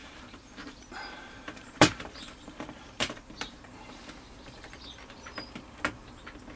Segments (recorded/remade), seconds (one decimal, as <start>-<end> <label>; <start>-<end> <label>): 0.0-4.0 remade; 4.0-6.6 recorded